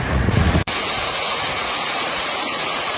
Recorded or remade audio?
remade